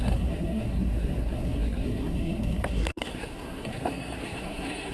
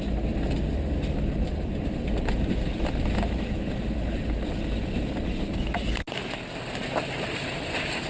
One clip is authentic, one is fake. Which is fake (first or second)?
first